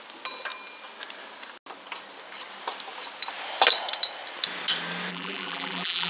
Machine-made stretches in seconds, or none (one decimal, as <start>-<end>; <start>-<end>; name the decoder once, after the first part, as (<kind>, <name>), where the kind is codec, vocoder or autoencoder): 5.1-6.1 (vocoder, BigVGAN v2)